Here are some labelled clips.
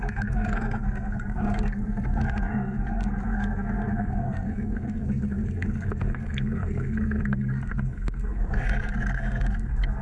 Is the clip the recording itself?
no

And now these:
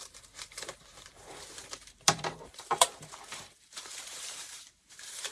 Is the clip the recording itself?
no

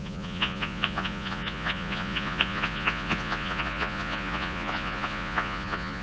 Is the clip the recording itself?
no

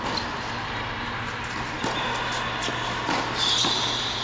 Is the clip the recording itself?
yes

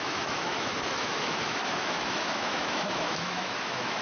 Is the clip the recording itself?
no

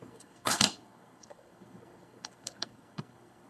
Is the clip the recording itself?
no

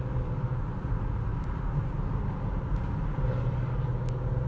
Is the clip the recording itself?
yes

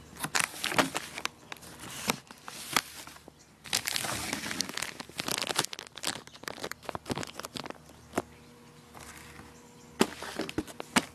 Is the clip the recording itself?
yes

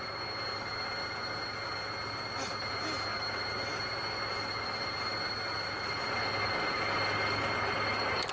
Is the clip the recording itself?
yes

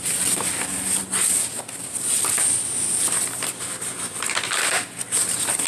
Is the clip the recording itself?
yes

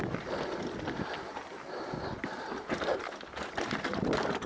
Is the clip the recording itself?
yes